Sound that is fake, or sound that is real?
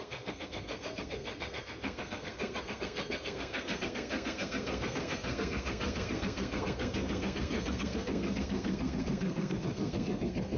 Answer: fake